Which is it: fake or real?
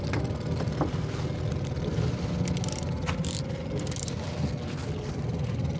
real